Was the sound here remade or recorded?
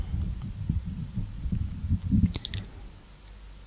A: recorded